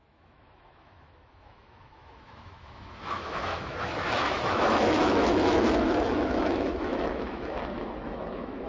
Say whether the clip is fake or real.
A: fake